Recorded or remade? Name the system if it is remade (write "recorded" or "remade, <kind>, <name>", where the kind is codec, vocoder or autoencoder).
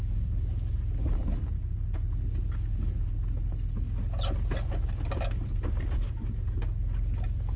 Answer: recorded